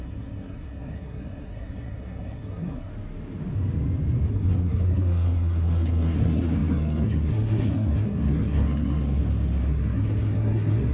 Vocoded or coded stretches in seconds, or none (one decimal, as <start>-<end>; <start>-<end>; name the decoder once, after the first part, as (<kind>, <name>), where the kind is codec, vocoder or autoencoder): 0.0-2.9 (codec, SNAC); 4.3-9.2; 9.7-10.9